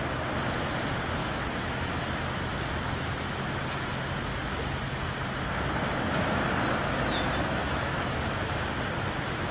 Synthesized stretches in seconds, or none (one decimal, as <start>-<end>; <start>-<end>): 1.2-1.9; 7.6-8.2